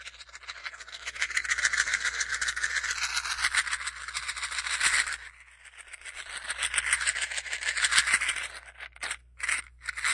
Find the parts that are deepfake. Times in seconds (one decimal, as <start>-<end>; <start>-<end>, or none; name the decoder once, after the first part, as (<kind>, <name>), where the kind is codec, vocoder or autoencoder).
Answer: 0.6-2.7 (codec, SNAC)